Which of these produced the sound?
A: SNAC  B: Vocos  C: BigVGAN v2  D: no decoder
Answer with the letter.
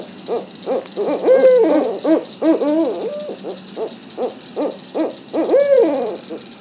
D